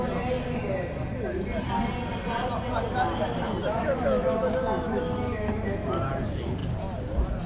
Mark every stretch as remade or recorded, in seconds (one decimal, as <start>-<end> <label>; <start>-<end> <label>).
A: 0.0-3.6 recorded; 3.6-6.1 remade; 6.1-7.5 recorded